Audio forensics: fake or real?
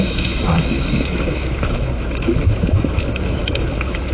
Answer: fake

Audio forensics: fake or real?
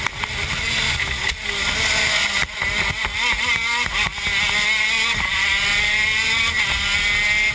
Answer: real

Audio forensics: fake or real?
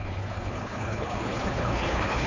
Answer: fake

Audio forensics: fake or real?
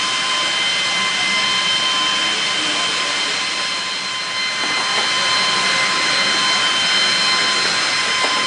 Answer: real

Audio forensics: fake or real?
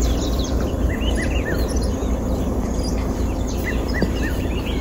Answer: fake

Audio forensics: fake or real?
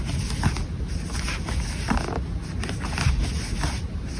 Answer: real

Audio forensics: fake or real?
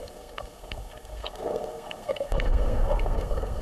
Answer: fake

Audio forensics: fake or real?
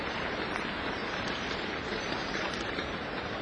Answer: fake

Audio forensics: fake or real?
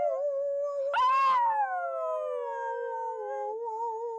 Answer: real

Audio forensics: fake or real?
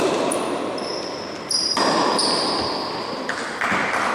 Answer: fake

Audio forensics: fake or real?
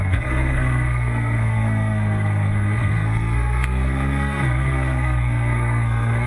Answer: fake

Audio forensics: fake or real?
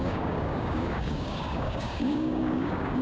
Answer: fake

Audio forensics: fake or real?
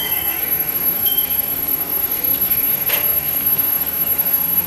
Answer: fake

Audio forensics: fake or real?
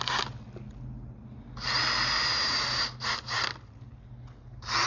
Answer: real